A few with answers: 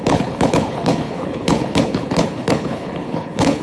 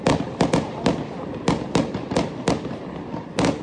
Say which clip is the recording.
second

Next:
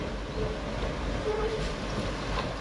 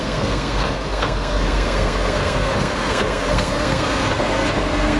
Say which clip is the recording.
first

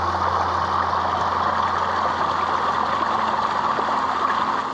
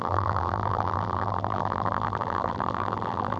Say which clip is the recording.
first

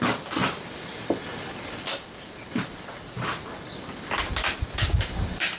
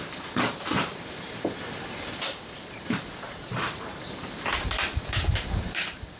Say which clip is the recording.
first